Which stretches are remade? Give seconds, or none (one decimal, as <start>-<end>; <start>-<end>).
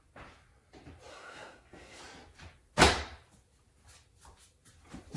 1.1-2.0